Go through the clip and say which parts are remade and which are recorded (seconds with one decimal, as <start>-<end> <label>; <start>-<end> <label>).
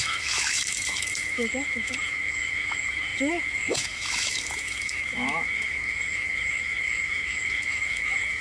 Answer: 0.0-8.4 remade